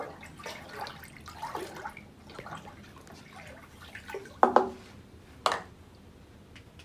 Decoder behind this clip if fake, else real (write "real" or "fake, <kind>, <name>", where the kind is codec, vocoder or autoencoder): real